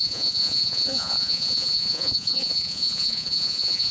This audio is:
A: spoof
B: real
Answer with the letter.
A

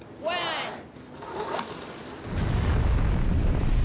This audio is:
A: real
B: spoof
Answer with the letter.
A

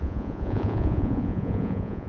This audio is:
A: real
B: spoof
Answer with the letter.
B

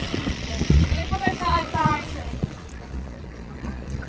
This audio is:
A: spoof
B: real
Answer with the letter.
A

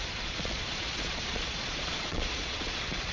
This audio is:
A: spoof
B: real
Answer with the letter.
A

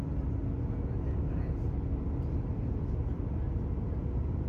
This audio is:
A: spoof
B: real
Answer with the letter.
B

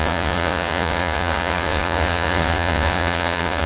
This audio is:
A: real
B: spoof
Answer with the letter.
B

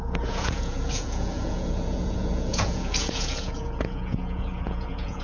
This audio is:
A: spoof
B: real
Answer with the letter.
A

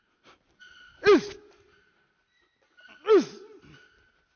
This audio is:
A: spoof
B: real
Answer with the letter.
B